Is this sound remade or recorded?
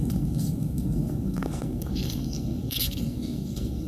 remade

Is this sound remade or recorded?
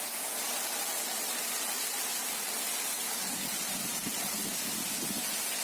recorded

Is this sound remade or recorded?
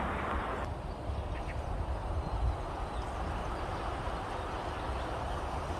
recorded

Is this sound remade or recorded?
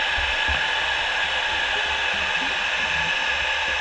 recorded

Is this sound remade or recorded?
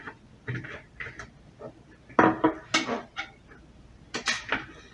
recorded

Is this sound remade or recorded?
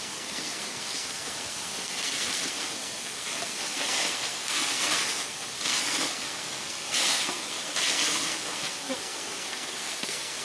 remade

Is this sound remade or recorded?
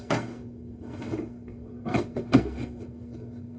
remade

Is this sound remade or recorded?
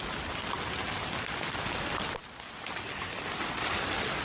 recorded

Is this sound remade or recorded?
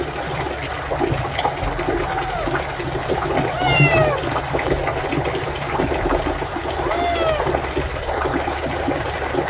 recorded